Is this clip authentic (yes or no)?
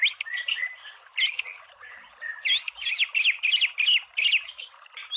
yes